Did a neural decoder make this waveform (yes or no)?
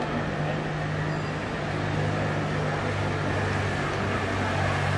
no